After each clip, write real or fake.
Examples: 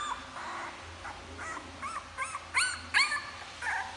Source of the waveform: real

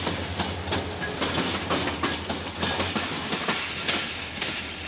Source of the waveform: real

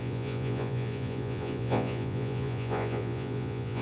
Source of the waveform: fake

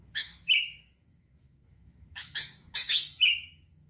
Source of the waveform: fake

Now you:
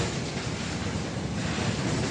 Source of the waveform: real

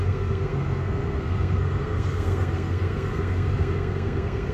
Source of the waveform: fake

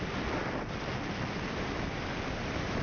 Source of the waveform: real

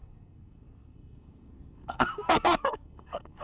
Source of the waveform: fake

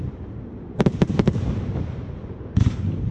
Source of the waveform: fake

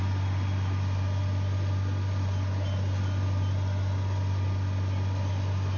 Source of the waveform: real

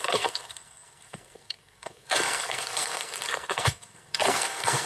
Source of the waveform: fake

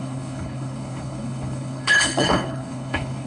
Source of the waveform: fake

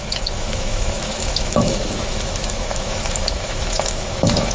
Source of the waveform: fake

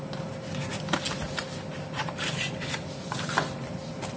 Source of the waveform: real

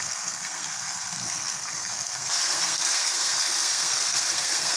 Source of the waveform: fake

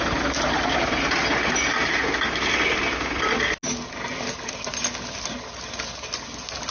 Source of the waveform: real